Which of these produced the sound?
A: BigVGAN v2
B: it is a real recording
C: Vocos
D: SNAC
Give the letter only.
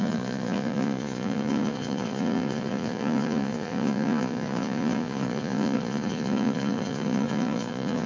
C